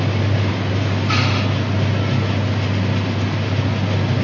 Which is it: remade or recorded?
recorded